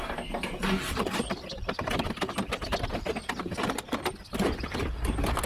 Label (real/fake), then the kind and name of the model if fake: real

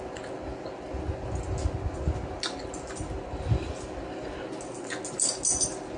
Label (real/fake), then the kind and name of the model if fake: real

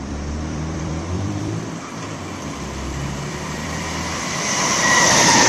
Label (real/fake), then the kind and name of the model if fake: fake, vocoder, BigVGAN v2